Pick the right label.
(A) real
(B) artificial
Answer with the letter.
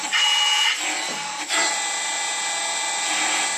A